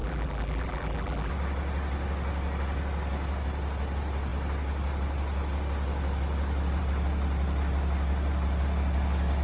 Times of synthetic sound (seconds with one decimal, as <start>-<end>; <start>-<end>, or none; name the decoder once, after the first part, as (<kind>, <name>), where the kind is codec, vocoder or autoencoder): 0.0-1.3 (vocoder, BigVGAN v2)